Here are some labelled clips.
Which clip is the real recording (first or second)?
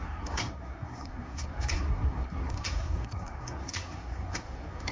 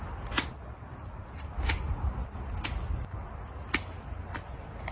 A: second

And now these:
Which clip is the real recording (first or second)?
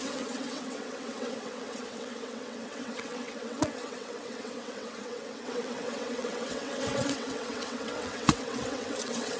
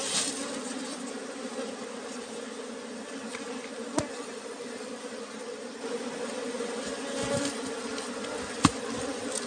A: second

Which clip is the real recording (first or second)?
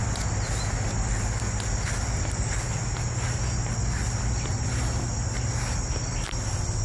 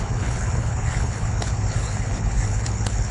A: first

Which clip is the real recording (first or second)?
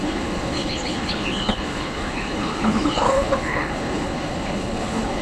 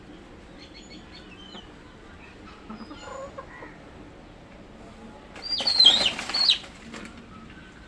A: second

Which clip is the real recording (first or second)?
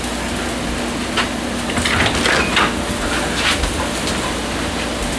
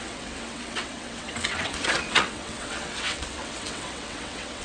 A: first